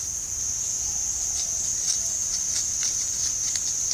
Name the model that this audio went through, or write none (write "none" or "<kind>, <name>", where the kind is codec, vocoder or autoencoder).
none